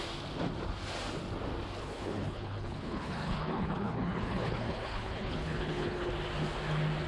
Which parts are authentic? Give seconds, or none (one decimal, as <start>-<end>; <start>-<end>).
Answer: 0.0-1.8; 6.1-7.1